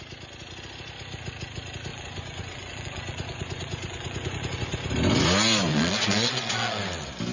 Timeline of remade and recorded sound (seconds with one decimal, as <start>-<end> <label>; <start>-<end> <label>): 0.0-1.9 recorded; 1.9-4.9 remade; 4.9-5.7 recorded; 5.7-6.8 remade; 6.8-7.3 recorded